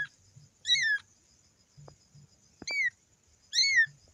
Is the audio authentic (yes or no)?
yes